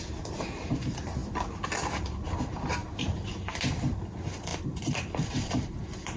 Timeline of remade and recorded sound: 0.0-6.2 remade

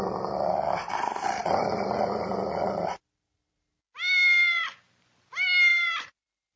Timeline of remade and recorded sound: 0.0-1.4 recorded; 1.4-2.0 remade; 2.0-5.7 recorded; 5.7-6.6 remade